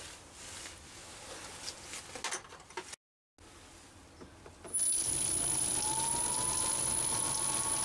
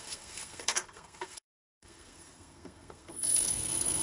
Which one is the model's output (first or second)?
second